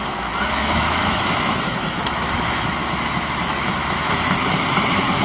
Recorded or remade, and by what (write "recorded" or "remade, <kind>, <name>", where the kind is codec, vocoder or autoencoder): remade, autoencoder, DAC-VAE